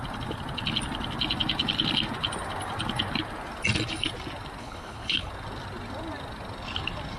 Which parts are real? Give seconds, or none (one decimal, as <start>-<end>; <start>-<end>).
0.0-4.6; 5.3-7.2